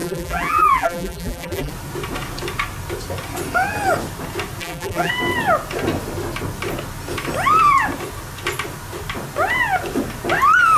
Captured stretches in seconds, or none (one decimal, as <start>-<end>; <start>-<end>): 1.7-4.6; 5.1-10.8